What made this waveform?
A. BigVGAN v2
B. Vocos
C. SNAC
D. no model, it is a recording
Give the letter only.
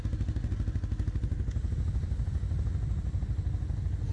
D